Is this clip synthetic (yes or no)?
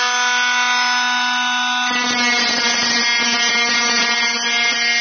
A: no